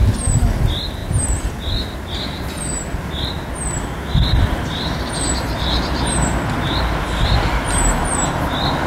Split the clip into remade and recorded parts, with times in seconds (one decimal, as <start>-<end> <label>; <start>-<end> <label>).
0.0-1.0 recorded; 1.0-1.5 remade; 1.5-4.3 recorded; 4.3-7.0 remade; 7.0-8.9 recorded

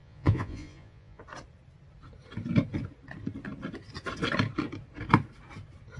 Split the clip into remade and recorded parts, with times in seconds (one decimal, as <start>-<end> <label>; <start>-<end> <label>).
0.0-1.2 remade; 1.2-6.0 recorded